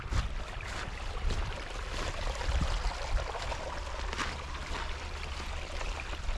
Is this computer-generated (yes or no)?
no